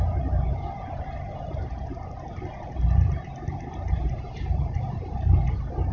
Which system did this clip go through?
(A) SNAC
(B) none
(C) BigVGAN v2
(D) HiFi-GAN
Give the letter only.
C